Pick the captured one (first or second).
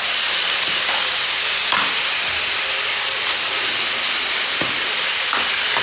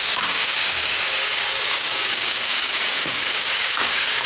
first